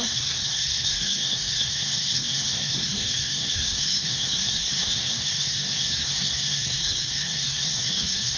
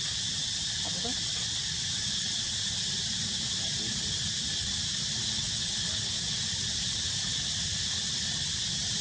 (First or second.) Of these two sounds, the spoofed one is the first